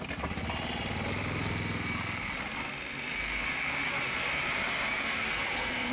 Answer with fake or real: real